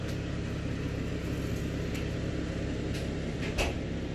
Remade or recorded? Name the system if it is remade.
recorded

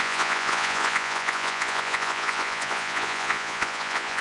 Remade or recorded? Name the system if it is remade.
remade, vocoder, Vocos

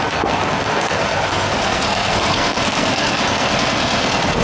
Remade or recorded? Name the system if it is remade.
remade, codec, SNAC